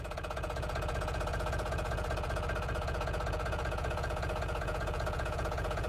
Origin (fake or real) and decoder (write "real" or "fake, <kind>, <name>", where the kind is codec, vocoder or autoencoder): fake, vocoder, Vocos